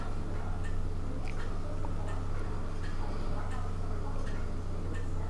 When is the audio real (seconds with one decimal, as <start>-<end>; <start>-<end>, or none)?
0.0-5.3